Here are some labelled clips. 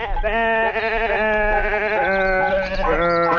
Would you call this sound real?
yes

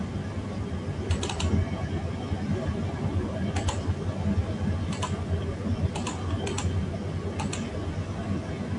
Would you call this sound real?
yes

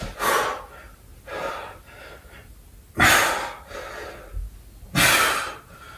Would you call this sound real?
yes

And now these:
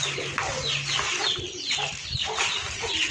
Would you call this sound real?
yes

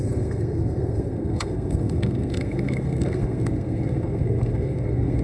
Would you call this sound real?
no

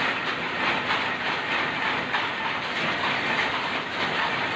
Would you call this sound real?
yes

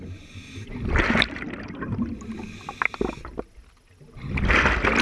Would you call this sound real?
yes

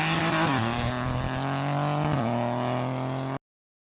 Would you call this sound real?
yes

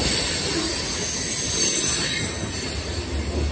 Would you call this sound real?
yes